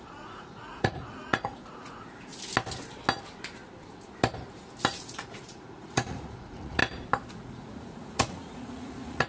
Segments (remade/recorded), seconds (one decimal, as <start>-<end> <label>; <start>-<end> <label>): 0.0-2.3 remade; 2.3-5.0 recorded; 5.0-6.8 remade; 6.8-7.3 recorded; 7.3-9.3 remade